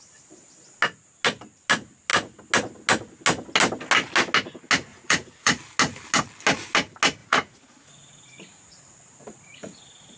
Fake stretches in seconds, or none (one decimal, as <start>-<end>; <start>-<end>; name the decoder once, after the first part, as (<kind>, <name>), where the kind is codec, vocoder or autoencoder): 4.9-5.6 (vocoder, Vocos); 7.2-10.2